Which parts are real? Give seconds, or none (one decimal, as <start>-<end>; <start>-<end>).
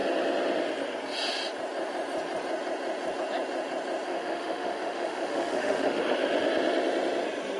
0.0-4.1; 6.0-7.6